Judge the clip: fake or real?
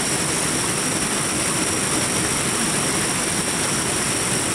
real